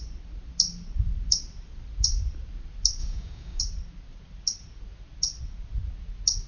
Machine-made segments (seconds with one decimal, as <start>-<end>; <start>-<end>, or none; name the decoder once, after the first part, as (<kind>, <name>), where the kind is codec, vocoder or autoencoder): 3.0-3.6 (codec, DAC)

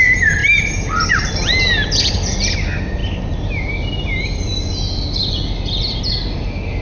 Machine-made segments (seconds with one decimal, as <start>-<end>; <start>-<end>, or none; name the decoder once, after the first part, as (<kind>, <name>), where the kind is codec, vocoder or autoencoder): none

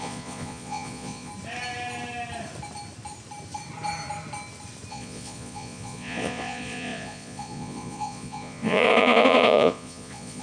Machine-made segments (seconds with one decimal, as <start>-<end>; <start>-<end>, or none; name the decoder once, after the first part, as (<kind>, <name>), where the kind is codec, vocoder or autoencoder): 0.0-1.3 (vocoder, Vocos); 4.9-10.4

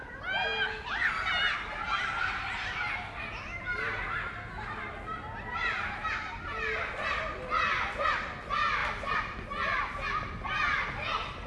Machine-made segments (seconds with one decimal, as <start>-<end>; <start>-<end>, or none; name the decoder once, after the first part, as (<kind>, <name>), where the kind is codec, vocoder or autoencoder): none